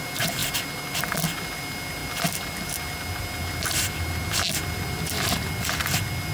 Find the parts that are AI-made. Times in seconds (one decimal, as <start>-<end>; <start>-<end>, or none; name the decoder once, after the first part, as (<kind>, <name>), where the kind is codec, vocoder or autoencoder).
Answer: none